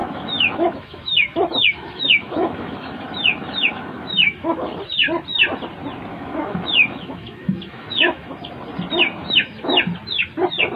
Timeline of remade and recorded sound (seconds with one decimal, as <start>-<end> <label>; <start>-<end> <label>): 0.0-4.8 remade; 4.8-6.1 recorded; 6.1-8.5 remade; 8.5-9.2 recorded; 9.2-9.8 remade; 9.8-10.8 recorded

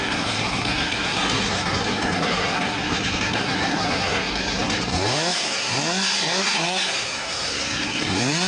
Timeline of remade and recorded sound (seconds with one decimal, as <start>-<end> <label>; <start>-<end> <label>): 0.0-8.5 remade

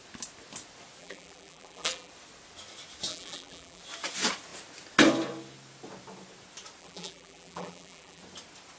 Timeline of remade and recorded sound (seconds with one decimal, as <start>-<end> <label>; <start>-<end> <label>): 0.0-1.0 recorded; 1.0-2.1 remade; 2.1-3.1 recorded; 3.1-3.8 remade; 3.8-6.8 recorded; 6.8-8.2 remade; 8.2-8.8 recorded

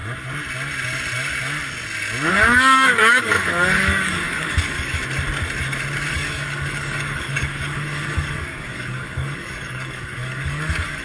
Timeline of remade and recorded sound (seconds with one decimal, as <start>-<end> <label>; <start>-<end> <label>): 0.0-2.3 recorded; 2.3-5.0 remade; 5.0-6.1 recorded; 6.1-11.0 remade

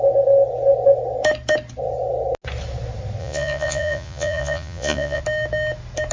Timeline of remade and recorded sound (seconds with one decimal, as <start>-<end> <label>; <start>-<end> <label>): 0.0-3.2 recorded; 3.2-5.2 remade; 5.2-6.1 recorded

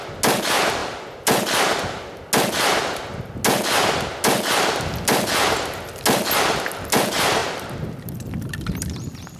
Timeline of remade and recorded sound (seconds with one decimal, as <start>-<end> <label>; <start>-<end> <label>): 0.0-9.4 recorded

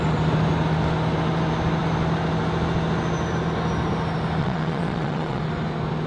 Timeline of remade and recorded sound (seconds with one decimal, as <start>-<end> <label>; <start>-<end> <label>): 0.0-4.4 recorded; 4.4-5.4 remade; 5.4-6.1 recorded

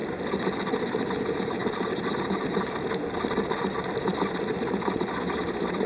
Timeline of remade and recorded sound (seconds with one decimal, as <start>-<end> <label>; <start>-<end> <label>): 0.0-5.9 recorded